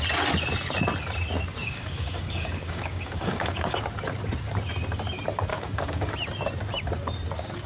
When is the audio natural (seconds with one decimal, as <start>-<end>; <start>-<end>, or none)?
0.0-1.6; 3.8-5.5; 6.1-7.7